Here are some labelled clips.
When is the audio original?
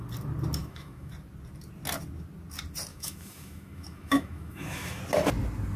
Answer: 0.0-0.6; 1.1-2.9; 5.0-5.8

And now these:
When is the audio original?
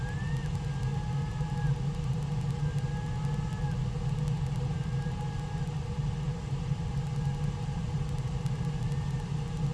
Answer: 0.0-0.9; 1.5-9.7